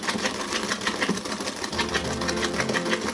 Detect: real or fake real